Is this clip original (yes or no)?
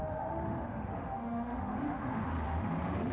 no